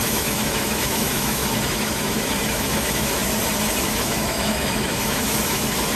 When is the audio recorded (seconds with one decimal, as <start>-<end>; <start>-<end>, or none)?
3.2-3.8